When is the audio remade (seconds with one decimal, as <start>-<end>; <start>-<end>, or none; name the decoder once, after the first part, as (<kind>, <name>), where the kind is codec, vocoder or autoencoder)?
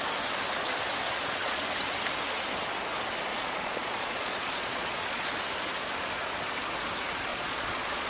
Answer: 1.0-1.6 (vocoder, Vocos); 3.3-5.3; 7.3-8.1